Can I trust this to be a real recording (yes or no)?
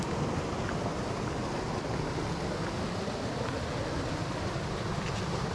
yes